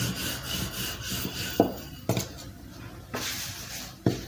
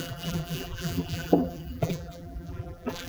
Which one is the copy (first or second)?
second